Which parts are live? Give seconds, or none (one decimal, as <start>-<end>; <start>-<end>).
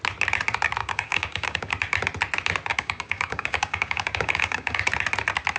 0.0-0.8; 1.7-2.7; 4.8-5.6